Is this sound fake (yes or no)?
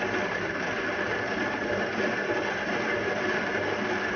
no